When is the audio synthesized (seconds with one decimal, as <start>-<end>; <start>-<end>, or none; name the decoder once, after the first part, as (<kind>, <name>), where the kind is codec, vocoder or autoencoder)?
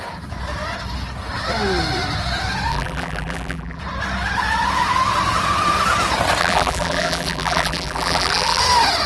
2.7-3.8 (vocoder, BigVGAN v2); 6.4-8.6